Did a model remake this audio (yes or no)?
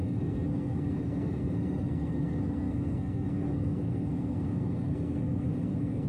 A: yes